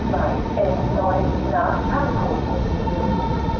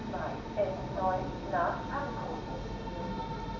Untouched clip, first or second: second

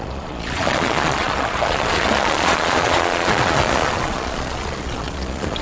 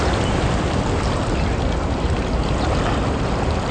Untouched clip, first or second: second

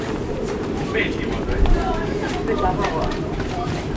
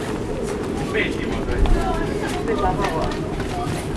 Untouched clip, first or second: second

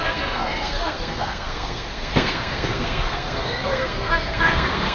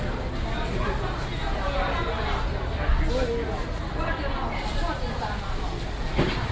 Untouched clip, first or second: second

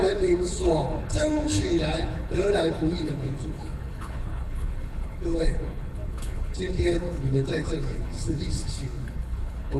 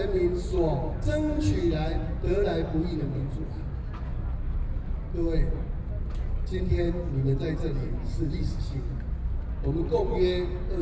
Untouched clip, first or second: second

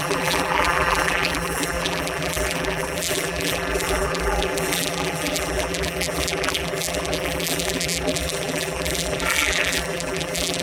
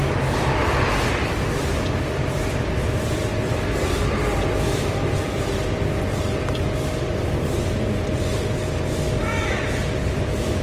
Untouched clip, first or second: second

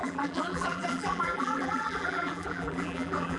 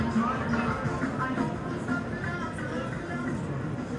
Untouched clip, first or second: second